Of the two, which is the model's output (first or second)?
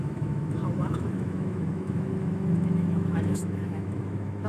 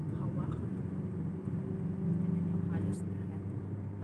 first